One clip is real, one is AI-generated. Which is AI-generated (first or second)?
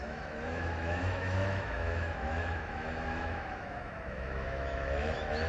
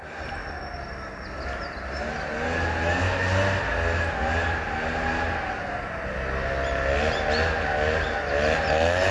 first